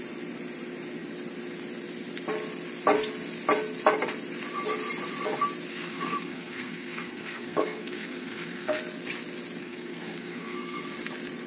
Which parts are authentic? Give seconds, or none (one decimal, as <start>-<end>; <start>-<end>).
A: 0.0-5.7; 8.8-9.6; 10.8-11.5